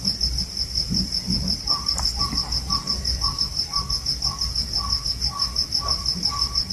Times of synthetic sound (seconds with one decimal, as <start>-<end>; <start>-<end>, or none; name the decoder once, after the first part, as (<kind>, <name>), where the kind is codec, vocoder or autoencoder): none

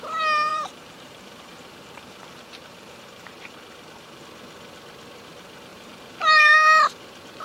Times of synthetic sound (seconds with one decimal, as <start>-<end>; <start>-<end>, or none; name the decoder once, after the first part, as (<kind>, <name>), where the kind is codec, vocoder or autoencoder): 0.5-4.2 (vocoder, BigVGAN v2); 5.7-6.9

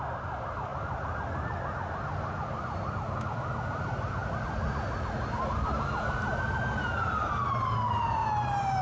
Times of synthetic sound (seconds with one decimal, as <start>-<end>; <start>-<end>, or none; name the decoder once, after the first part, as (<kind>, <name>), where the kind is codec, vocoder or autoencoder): 8.2-8.8 (vocoder, BigVGAN v2)